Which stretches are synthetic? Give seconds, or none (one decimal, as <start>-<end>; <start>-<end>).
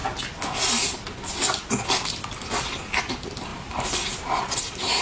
3.5-4.6